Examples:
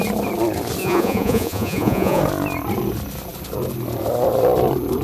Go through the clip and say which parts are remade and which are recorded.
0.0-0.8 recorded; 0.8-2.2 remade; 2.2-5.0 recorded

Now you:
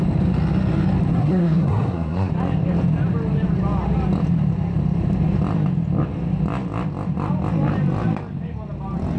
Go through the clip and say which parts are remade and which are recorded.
0.0-1.1 recorded; 1.1-2.3 remade; 2.3-9.2 recorded

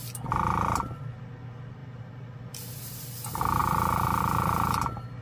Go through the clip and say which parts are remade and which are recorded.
0.0-5.2 recorded

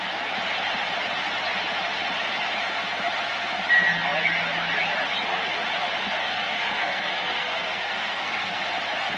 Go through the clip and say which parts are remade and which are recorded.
0.0-6.2 recorded; 6.2-8.6 remade; 8.6-9.2 recorded

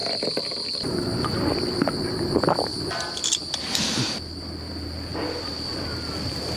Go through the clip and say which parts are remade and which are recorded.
0.0-1.4 remade; 1.4-2.7 recorded; 2.7-3.5 remade; 3.5-5.1 recorded; 5.1-6.6 remade

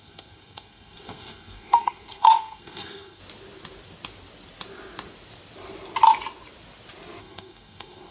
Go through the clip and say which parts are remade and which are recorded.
0.0-3.2 remade; 3.2-7.2 recorded; 7.2-8.1 remade

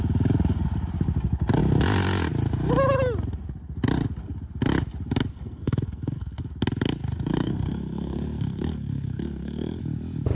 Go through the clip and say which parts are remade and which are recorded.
0.0-5.3 recorded; 5.3-6.4 remade; 6.4-7.3 recorded; 7.3-9.8 remade; 9.8-10.3 recorded

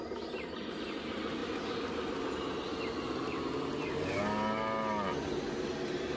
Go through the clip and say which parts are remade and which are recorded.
0.0-6.2 recorded